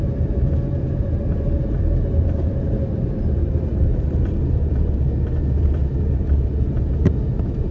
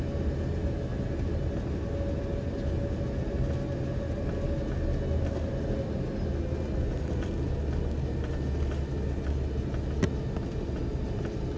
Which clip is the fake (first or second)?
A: first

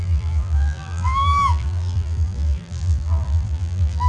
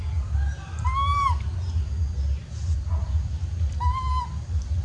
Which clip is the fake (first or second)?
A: first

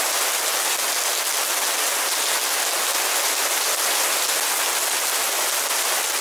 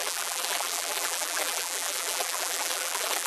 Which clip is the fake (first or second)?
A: second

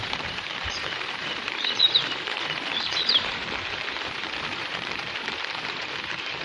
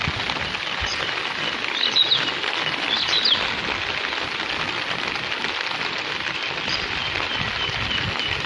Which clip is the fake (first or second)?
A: first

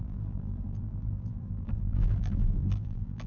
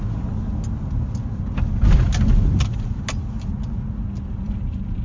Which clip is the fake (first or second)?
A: first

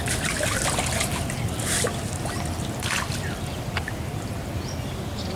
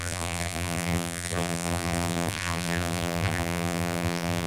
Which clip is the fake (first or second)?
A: second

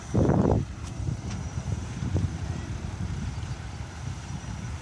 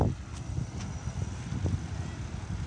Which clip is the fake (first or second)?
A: first